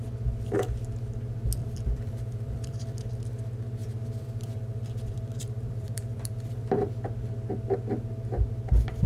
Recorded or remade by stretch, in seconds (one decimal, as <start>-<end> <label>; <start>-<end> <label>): 0.0-1.6 recorded; 1.6-3.0 remade; 3.0-3.8 recorded; 3.8-6.9 remade; 6.9-9.1 recorded